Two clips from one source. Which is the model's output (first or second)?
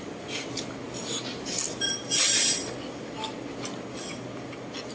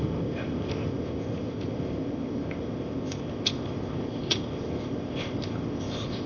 second